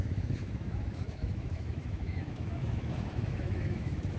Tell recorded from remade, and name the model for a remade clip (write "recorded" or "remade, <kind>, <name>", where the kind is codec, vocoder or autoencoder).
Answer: remade, autoencoder, DAC-VAE